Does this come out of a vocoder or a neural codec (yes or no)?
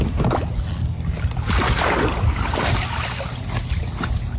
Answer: no